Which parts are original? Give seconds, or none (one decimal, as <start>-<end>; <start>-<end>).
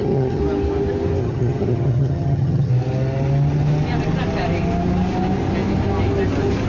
0.4-1.2; 2.7-6.7